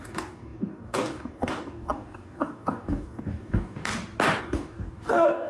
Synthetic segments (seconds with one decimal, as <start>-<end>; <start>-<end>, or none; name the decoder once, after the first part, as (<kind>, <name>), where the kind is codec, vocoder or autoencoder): 0.0-3.9 (codec, DAC); 4.4-5.5